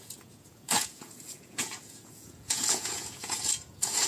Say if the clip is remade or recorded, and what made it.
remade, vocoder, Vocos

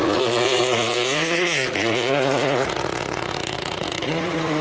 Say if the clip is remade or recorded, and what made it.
remade, vocoder, Vocos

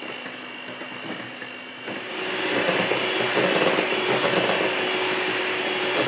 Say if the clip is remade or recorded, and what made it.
recorded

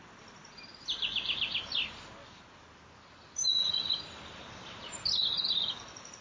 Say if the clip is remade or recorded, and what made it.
recorded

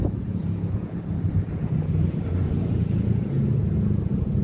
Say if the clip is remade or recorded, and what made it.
remade, vocoder, Vocos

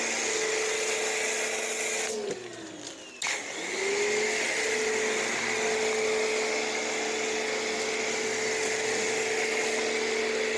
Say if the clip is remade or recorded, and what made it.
recorded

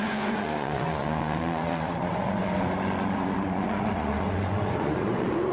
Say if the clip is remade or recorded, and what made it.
remade, vocoder, Vocos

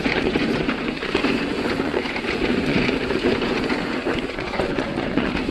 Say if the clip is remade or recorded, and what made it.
remade, vocoder, Vocos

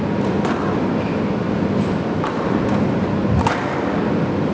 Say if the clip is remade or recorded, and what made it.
recorded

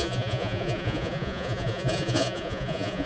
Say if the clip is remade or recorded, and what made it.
remade, vocoder, Vocos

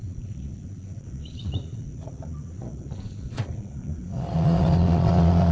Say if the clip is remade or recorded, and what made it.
remade, vocoder, Vocos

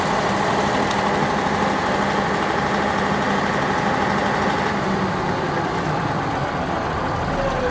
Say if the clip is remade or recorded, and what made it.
recorded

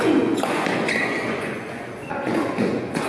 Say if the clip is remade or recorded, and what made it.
remade, vocoder, Vocos